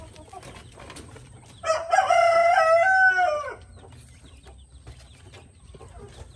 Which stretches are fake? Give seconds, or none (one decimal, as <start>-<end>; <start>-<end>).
none